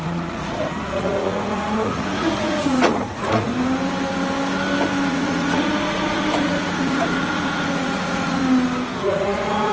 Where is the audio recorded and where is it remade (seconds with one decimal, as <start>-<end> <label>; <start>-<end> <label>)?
0.0-3.5 remade; 3.5-5.1 recorded; 5.1-8.4 remade; 8.4-9.0 recorded; 9.0-9.7 remade